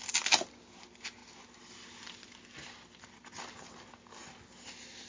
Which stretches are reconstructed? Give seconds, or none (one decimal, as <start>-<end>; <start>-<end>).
none